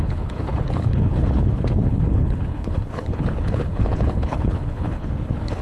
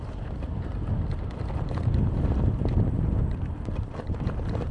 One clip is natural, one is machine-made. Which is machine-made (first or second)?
first